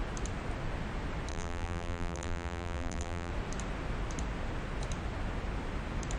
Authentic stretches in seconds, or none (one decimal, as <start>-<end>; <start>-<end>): 0.0-1.3; 3.3-6.2